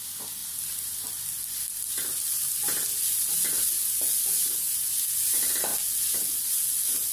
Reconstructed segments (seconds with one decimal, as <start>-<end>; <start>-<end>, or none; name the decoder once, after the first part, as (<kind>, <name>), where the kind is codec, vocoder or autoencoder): none